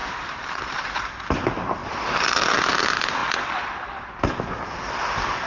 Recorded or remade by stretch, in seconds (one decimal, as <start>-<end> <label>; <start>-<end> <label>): 0.0-1.2 remade; 1.2-1.8 recorded; 1.8-2.4 remade; 2.4-5.5 recorded